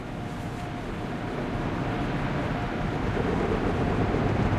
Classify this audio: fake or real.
real